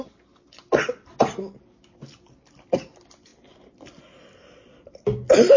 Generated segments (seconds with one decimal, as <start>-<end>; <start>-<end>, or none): none